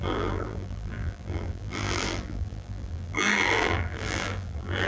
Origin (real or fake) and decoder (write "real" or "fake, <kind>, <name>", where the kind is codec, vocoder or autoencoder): fake, vocoder, BigVGAN v2